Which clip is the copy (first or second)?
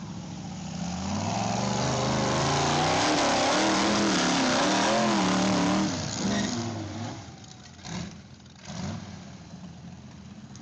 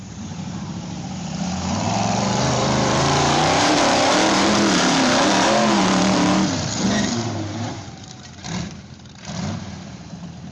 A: second